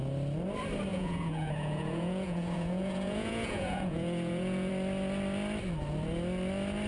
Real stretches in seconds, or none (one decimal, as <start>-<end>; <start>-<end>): 0.0-0.9; 4.7-6.9